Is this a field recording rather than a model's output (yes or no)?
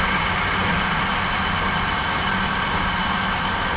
yes